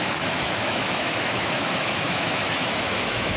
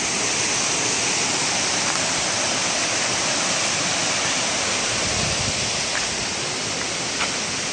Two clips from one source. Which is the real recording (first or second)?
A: second